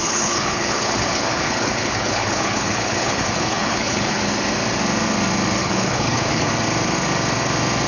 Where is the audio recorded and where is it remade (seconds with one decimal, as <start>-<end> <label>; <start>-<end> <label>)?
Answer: 0.0-4.2 remade; 4.2-5.6 recorded; 5.6-6.5 remade; 6.5-7.9 recorded